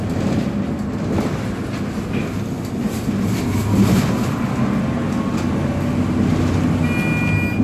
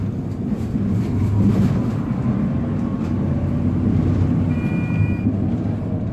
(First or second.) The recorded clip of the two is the first